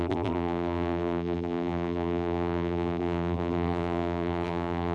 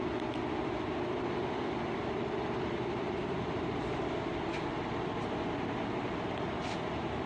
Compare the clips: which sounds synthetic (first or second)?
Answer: first